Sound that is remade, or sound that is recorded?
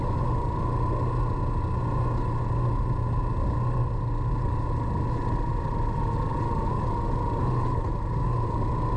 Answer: recorded